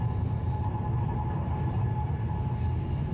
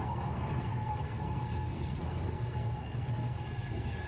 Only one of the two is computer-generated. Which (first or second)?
second